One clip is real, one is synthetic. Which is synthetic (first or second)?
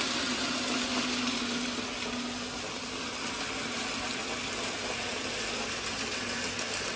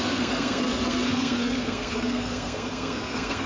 second